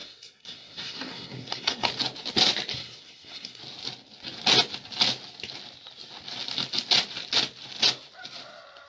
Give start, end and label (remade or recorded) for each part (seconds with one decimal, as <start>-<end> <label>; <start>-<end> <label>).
0.0-1.9 remade; 1.9-2.7 recorded; 2.7-3.6 remade; 3.6-8.9 recorded

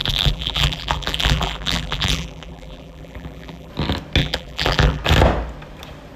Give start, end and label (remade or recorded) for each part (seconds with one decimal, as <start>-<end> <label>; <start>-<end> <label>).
0.0-3.7 remade; 3.7-4.2 recorded; 4.2-5.0 remade; 5.0-6.2 recorded

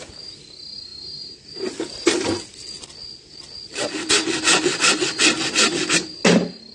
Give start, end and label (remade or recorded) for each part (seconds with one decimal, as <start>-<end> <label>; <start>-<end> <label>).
0.0-6.7 recorded

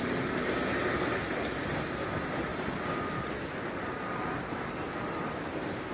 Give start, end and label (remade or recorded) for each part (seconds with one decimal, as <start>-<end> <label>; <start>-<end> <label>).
0.0-5.9 recorded

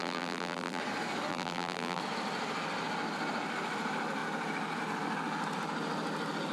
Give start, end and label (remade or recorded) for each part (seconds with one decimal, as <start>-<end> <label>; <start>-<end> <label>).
0.0-0.8 remade; 0.8-1.3 recorded; 1.3-2.0 remade; 2.0-6.5 recorded

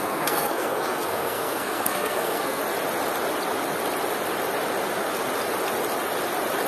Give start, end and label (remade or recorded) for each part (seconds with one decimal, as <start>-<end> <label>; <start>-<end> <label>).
0.0-2.6 remade; 2.6-6.7 recorded

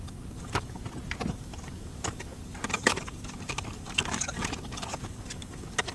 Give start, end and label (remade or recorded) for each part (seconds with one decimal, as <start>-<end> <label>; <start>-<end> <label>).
0.0-0.8 remade; 0.8-1.3 recorded; 1.3-5.9 remade